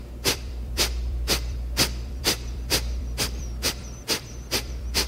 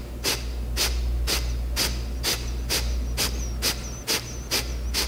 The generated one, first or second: first